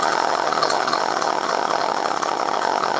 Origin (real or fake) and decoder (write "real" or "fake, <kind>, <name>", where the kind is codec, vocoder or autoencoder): fake, vocoder, HiFi-GAN